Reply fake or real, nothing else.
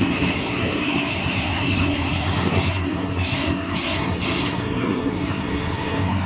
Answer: fake